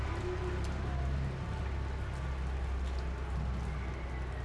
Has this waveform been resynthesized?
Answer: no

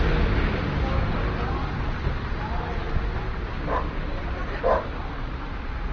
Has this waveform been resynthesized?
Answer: no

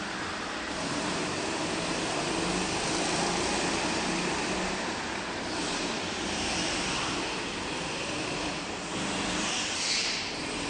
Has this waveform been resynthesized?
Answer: no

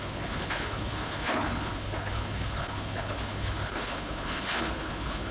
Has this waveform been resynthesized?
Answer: yes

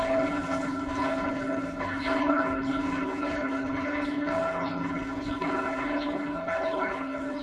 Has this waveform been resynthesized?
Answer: yes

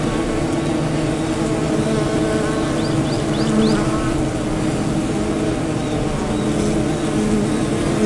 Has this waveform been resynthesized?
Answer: no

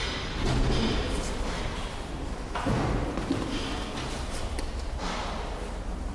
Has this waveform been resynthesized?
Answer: no